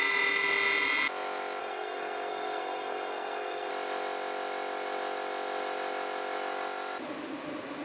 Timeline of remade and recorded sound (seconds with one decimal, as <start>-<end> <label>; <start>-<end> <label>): 0.0-1.6 recorded; 1.6-3.7 remade; 3.7-7.8 recorded